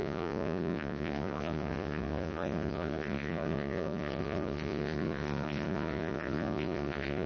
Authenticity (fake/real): fake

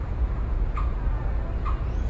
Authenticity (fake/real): fake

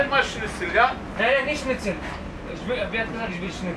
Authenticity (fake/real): real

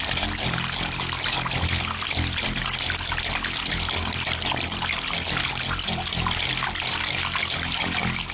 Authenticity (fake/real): real